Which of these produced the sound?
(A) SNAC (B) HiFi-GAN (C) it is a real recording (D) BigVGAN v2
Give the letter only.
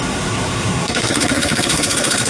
A